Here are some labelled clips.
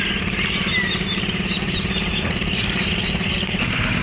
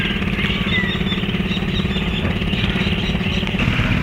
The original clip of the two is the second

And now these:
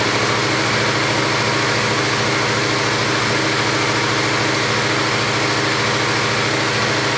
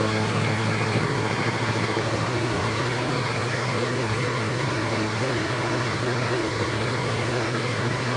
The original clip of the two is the first